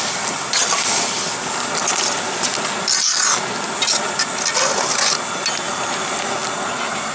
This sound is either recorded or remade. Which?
recorded